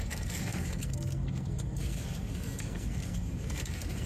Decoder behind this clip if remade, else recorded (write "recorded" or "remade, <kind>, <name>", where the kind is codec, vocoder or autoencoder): remade, codec, SNAC